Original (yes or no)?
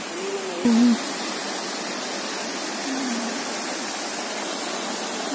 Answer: yes